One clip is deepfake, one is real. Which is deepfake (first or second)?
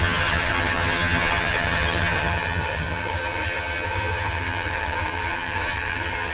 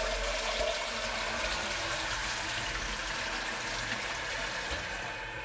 first